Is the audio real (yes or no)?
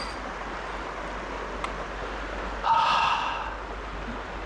yes